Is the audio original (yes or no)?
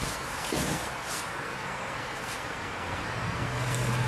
no